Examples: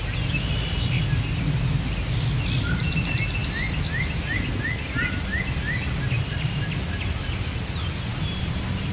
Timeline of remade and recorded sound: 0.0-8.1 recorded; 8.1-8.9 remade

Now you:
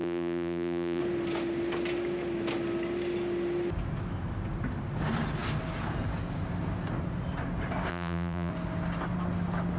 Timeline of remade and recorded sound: 0.0-1.0 remade; 1.0-7.9 recorded; 7.9-8.5 remade; 8.5-9.8 recorded